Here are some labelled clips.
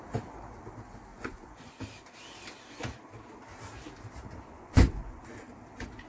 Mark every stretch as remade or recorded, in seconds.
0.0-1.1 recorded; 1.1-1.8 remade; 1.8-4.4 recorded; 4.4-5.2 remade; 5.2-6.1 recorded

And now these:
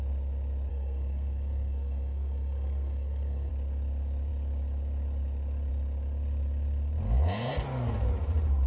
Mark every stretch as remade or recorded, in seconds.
0.0-0.7 recorded; 0.7-3.5 remade; 3.5-8.7 recorded

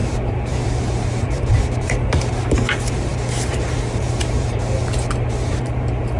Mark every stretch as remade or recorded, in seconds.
0.0-4.8 remade; 4.8-5.3 recorded; 5.3-6.2 remade

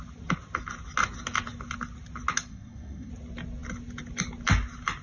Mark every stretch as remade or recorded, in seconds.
0.0-2.5 recorded; 2.5-3.1 remade; 3.1-5.0 recorded

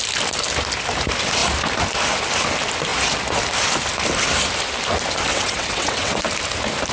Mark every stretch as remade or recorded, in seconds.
0.0-5.3 recorded; 5.3-6.3 remade; 6.3-6.9 recorded

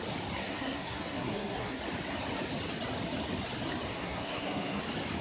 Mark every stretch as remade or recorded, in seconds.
0.0-0.4 recorded; 0.4-1.8 remade; 1.8-3.9 recorded; 3.9-4.8 remade; 4.8-5.2 recorded

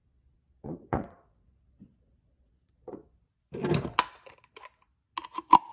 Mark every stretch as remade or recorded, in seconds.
0.0-3.4 remade; 3.4-5.7 recorded